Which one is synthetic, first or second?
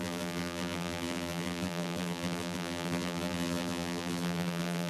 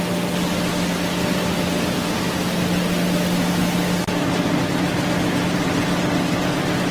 first